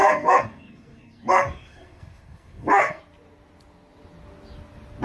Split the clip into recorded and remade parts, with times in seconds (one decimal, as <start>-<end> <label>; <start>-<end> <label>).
0.0-3.0 remade; 3.0-5.0 recorded